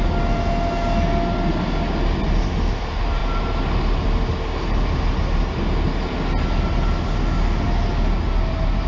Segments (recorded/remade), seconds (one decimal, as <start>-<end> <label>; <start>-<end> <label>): 0.0-8.9 recorded